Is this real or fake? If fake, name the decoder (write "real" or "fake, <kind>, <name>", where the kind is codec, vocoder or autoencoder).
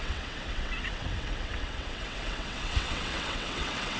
fake, vocoder, WaveNeXt